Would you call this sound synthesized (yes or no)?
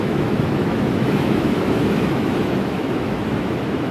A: yes